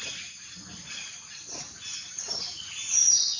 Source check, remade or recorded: recorded